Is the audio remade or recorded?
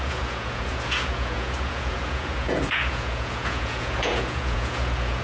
remade